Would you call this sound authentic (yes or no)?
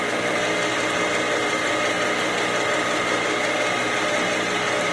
yes